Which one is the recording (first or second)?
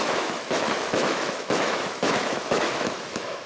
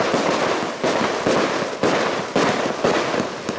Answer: second